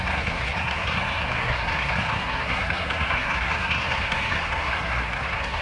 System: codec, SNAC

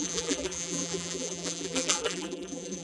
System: vocoder, BigVGAN v2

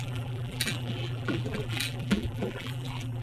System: vocoder, BigVGAN v2